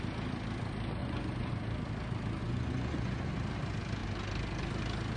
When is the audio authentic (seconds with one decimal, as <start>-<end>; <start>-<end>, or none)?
0.0-1.0; 1.5-2.4; 3.3-5.2